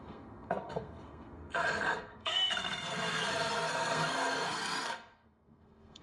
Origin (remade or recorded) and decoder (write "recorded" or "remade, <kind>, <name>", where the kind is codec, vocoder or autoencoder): remade, codec, SNAC